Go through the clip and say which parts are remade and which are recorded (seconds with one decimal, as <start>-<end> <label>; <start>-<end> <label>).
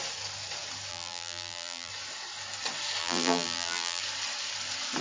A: 0.0-0.9 recorded; 0.9-1.9 remade; 1.9-3.0 recorded; 3.0-4.0 remade; 4.0-5.0 recorded